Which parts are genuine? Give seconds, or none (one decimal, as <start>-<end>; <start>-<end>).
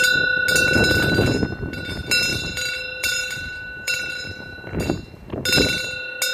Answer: 0.0-2.3; 4.8-6.3